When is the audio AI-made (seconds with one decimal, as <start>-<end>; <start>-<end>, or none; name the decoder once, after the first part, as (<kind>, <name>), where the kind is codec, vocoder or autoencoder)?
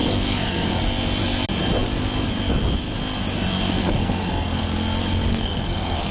0.0-0.7 (codec, SNAC); 3.8-4.6; 5.3-6.1